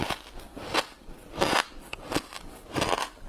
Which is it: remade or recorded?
recorded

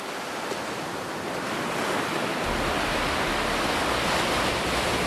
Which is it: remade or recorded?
recorded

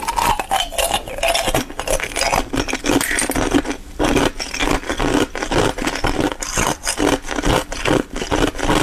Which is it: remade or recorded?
recorded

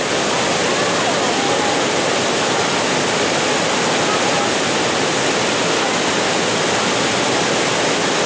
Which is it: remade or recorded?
recorded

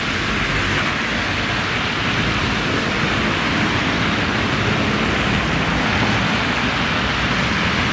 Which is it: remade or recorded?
recorded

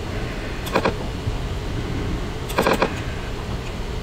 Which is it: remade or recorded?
recorded